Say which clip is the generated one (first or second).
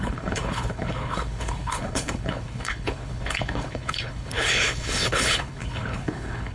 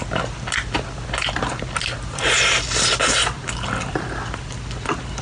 first